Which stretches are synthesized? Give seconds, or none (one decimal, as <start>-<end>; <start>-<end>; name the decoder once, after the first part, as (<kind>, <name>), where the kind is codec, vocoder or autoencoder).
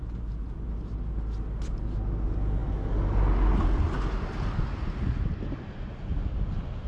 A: none